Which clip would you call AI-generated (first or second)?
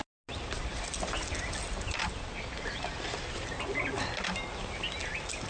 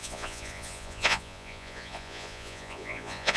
second